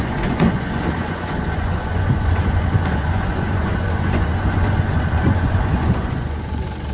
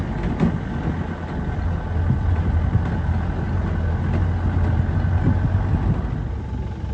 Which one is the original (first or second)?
second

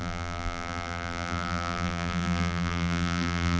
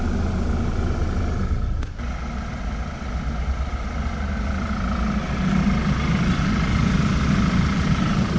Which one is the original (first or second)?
second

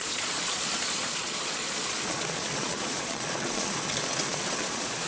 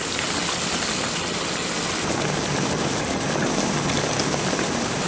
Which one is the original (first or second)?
second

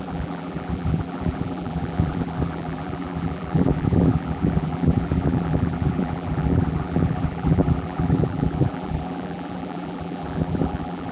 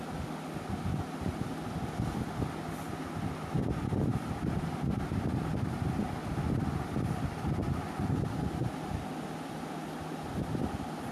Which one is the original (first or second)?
second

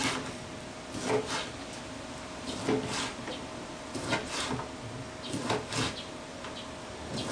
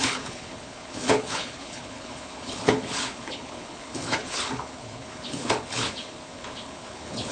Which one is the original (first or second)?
first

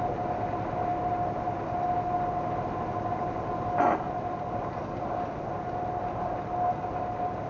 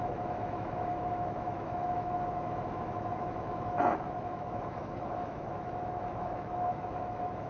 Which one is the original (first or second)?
first